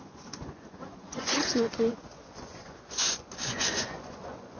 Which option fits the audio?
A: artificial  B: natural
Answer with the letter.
A